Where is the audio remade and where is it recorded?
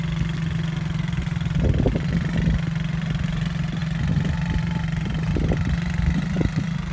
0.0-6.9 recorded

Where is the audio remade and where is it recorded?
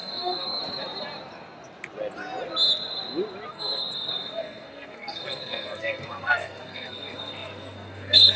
0.0-0.6 remade; 0.6-3.5 recorded; 3.5-8.4 remade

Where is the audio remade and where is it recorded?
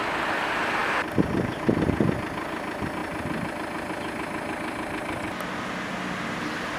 0.0-6.8 recorded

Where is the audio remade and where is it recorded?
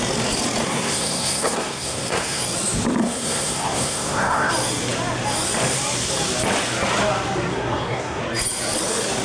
0.0-0.6 recorded; 0.6-2.4 remade; 2.4-3.0 recorded; 3.0-4.5 remade; 4.5-7.5 recorded; 7.5-8.2 remade; 8.2-9.2 recorded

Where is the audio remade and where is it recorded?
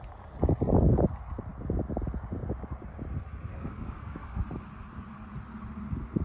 0.0-3.5 recorded; 3.5-4.4 remade; 4.4-6.2 recorded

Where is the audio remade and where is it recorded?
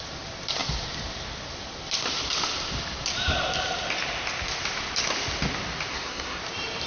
0.0-5.9 recorded; 5.9-6.4 remade; 6.4-6.9 recorded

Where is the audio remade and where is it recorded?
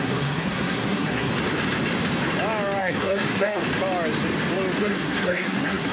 0.0-1.3 remade; 1.3-2.8 recorded; 2.8-3.6 remade; 3.6-4.8 recorded; 4.8-5.9 remade